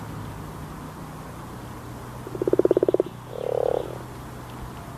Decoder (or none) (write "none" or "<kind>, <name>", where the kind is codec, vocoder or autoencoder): vocoder, BigVGAN v2